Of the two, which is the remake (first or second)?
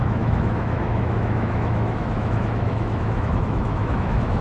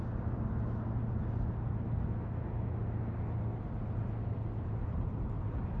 first